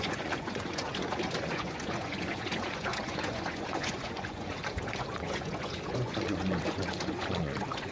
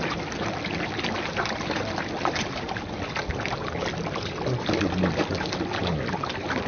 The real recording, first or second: second